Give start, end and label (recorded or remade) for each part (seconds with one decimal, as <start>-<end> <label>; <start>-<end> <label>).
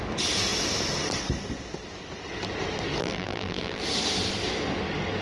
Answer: 0.0-3.0 recorded; 3.0-3.8 remade; 3.8-5.2 recorded